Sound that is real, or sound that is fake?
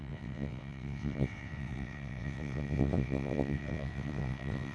fake